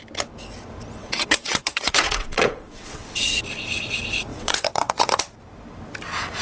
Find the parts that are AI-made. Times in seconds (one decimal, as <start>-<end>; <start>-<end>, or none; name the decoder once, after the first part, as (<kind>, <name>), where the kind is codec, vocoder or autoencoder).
1.0-3.4 (vocoder, WaveNeXt); 4.3-5.2